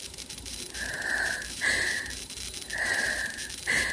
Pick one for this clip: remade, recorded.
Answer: remade